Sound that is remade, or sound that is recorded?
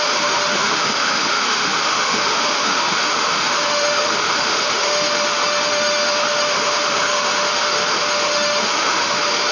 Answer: remade